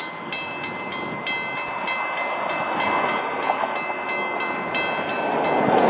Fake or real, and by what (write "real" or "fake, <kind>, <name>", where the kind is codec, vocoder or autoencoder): real